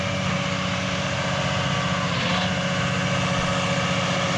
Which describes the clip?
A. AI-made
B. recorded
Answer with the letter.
B